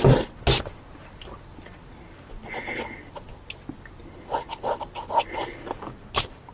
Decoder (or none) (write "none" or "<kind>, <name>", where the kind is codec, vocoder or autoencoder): none